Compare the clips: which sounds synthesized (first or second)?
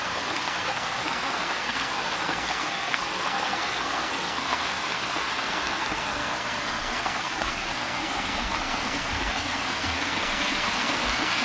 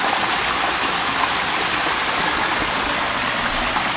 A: first